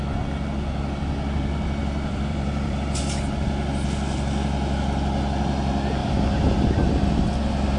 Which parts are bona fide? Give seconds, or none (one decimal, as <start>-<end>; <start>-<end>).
0.0-1.8; 3.0-7.8